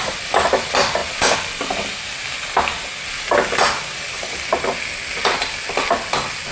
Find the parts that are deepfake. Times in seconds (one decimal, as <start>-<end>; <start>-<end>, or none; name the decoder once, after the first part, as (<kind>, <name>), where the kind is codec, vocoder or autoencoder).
none